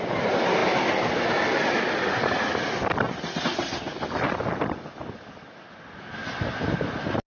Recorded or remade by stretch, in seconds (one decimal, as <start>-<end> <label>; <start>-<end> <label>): 0.0-7.3 recorded